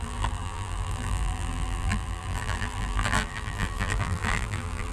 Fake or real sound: fake